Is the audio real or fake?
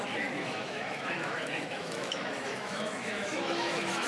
fake